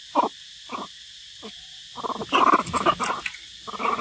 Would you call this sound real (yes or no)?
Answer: yes